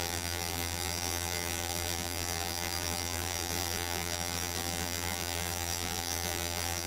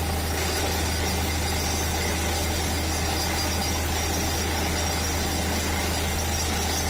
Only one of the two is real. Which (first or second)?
second